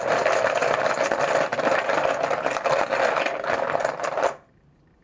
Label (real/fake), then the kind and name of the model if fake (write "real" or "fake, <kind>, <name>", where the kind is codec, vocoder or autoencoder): real